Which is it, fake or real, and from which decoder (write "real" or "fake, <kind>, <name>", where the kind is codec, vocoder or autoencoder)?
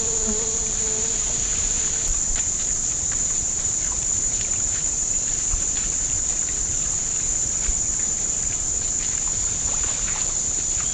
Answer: fake, vocoder, BigVGAN v2